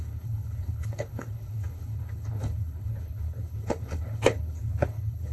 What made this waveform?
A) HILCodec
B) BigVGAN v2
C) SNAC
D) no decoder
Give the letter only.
A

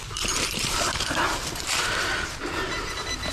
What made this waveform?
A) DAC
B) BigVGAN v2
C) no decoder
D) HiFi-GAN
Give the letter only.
B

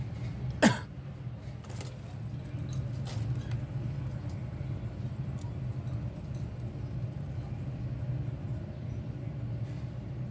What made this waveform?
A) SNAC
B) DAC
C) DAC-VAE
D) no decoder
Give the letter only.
D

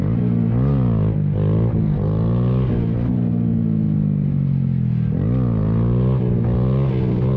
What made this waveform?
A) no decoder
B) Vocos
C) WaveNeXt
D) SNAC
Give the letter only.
A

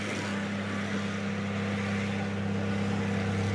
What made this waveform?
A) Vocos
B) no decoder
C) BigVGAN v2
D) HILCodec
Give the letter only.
B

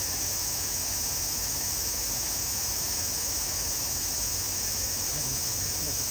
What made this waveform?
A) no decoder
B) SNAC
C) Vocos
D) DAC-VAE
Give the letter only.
D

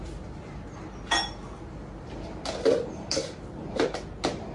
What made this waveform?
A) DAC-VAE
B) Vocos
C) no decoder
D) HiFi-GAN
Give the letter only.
C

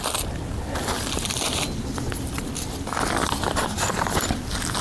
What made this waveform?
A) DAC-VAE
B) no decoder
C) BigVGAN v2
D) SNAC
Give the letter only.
B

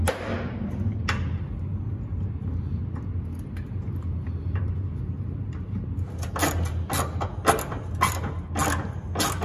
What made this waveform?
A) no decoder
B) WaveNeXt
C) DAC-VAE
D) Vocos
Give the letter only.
A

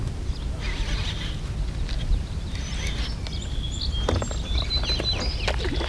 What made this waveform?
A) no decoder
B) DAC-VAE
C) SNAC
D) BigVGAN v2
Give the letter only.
A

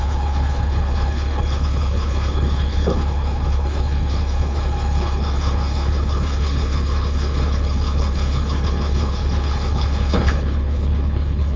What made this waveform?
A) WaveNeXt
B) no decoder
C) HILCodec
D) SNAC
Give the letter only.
C